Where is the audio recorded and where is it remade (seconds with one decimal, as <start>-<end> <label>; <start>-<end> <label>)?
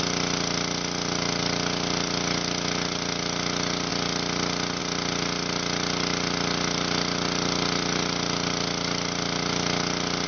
0.0-10.3 recorded